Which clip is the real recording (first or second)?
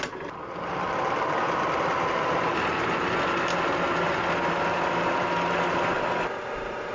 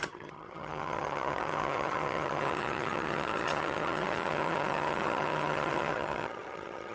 first